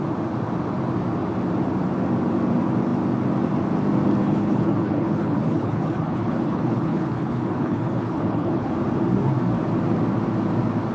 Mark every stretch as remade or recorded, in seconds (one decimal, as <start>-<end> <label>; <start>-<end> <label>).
0.0-4.2 recorded; 4.2-8.7 remade; 8.7-10.9 recorded